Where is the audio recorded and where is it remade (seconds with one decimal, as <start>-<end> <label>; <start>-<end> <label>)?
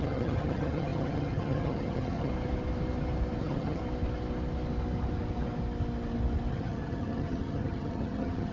0.0-2.3 remade; 2.3-3.4 recorded; 3.4-3.8 remade; 3.8-6.5 recorded; 6.5-8.5 remade